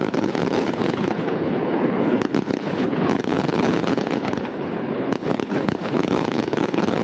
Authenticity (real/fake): fake